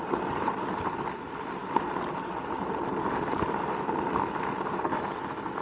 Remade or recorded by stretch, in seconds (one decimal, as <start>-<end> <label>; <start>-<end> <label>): 0.0-5.6 recorded